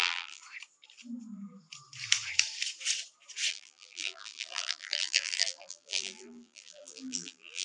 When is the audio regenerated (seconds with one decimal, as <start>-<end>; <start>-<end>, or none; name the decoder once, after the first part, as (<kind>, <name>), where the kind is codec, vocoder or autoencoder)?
0.0-0.4 (vocoder, BigVGAN v2); 3.5-7.6